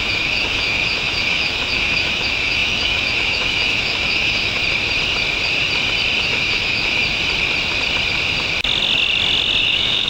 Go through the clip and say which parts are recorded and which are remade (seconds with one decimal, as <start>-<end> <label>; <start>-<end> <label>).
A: 0.0-4.6 remade; 4.6-6.2 recorded; 6.2-7.0 remade; 7.0-9.6 recorded; 9.6-10.1 remade

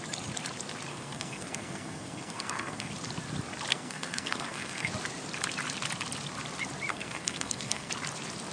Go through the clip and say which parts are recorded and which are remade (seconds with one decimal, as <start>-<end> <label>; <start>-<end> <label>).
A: 0.0-0.9 recorded; 0.9-2.9 remade; 2.9-3.7 recorded; 3.7-4.9 remade; 4.9-6.9 recorded; 6.9-7.9 remade; 7.9-8.5 recorded

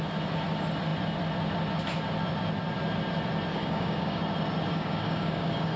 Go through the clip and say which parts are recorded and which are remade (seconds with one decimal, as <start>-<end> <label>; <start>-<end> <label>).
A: 0.0-3.5 recorded; 3.5-4.2 remade; 4.2-4.7 recorded; 4.7-5.8 remade

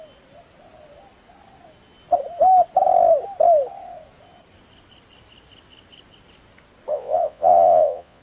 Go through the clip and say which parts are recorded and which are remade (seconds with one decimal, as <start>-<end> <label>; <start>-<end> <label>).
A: 0.0-6.9 recorded; 6.9-8.2 remade